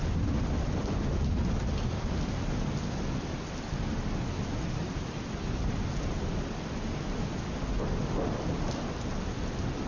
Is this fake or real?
real